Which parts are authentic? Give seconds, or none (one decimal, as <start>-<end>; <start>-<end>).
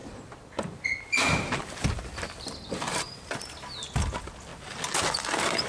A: 3.4-5.7